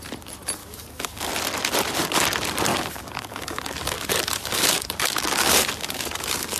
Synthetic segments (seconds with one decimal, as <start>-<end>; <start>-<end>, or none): 0.6-1.3; 2.7-6.6